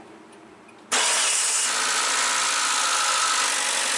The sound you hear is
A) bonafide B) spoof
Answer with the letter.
A